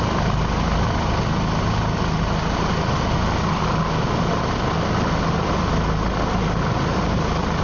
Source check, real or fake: real